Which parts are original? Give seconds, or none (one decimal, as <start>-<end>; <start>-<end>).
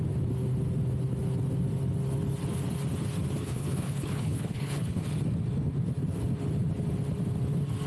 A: 0.0-3.4; 5.0-7.9